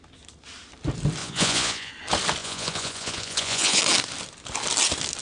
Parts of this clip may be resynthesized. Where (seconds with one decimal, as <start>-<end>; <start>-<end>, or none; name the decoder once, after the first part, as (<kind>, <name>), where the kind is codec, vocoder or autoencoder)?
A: 1.2-1.9 (vocoder, Vocos); 2.4-3.8